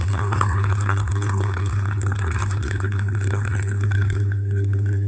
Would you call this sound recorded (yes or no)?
no